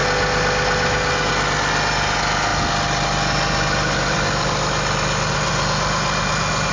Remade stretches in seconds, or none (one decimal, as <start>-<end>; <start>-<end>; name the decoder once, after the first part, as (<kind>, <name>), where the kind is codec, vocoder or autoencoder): none